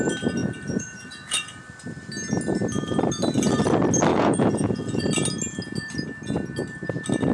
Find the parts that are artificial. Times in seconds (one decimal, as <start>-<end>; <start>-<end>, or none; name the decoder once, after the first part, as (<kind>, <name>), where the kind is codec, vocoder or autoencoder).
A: 0.4-1.6 (vocoder, Vocos); 4.1-5.0